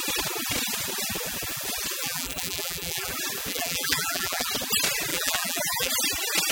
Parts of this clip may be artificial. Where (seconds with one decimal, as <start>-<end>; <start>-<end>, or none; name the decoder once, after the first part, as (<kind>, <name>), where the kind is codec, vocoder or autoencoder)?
2.0-3.1 (vocoder, BigVGAN v2); 3.5-4.5; 5.1-5.9